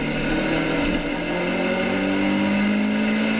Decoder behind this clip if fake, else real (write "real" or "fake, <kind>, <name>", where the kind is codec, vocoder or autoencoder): real